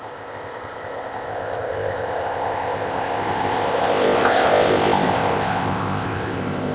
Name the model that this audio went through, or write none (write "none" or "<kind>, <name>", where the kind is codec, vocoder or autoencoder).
codec, ZipCodec